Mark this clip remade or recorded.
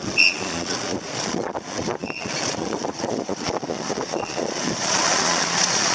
remade